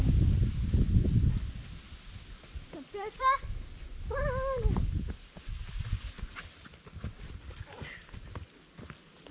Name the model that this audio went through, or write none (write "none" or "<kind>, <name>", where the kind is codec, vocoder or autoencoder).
none